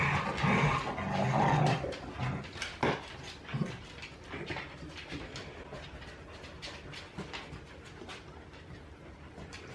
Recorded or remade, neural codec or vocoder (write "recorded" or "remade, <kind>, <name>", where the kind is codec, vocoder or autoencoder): recorded